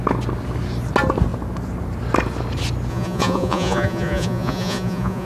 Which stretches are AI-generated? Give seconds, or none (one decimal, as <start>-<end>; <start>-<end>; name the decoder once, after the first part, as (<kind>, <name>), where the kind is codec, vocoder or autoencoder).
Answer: 2.9-5.3 (vocoder, Vocos)